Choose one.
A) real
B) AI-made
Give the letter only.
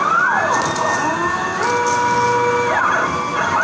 A